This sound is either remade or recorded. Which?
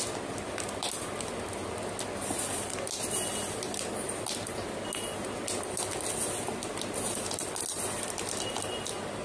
recorded